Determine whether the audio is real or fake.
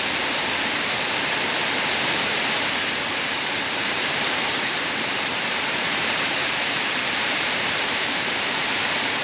fake